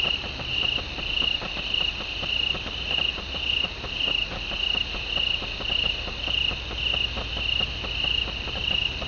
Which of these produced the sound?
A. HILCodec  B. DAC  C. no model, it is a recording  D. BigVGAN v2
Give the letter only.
C